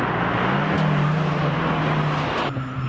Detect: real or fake real